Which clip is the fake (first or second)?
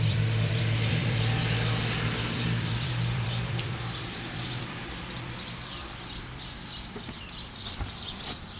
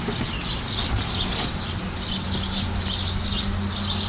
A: first